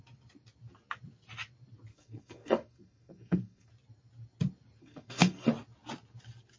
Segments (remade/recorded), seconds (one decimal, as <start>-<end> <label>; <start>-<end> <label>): 0.0-1.9 recorded; 1.9-3.7 remade; 3.7-4.8 recorded; 4.8-5.5 remade; 5.5-6.6 recorded